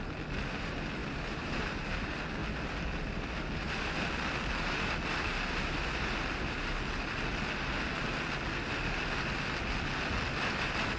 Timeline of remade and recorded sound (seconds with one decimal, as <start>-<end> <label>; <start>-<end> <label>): 0.0-1.0 recorded; 1.0-1.7 remade; 1.7-11.0 recorded